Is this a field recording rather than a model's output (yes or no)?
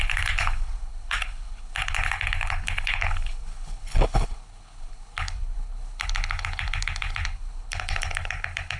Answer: no